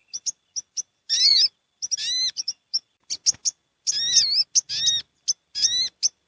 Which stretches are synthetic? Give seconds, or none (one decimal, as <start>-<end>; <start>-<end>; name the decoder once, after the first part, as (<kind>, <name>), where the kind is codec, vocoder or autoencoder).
none